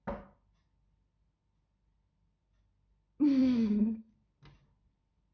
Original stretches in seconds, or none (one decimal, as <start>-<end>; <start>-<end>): 0.0-3.4; 4.1-5.3